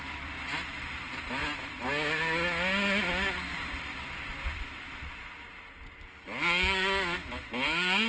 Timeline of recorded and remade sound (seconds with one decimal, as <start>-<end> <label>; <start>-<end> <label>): 0.0-8.1 recorded